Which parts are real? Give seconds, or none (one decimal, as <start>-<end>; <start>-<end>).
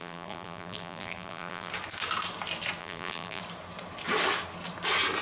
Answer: 1.7-2.8; 3.4-5.2